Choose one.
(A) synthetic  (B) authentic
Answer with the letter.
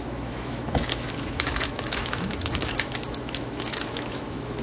A